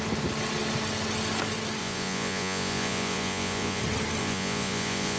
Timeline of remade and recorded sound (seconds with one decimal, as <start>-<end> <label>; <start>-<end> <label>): 0.0-1.8 recorded; 1.8-3.8 remade; 3.8-4.2 recorded; 4.2-5.2 remade